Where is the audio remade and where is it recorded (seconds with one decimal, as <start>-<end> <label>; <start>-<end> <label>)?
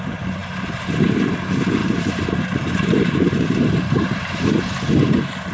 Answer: 0.0-1.8 recorded; 1.8-5.1 remade; 5.1-5.5 recorded